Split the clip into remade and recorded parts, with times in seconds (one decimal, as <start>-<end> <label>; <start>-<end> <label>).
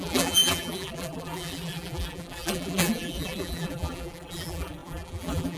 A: 0.0-5.6 remade